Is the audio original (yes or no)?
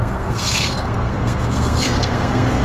no